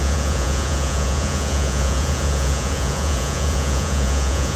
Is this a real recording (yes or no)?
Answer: no